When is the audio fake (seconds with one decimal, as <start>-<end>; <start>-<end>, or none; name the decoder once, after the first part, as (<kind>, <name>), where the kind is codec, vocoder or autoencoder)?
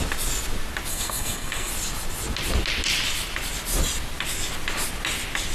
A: 0.9-1.7 (codec, SNAC)